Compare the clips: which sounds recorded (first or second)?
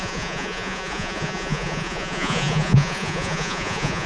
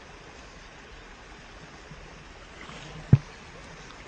second